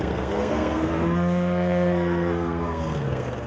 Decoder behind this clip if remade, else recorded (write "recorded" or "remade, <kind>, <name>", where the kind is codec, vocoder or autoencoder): remade, codec, SNAC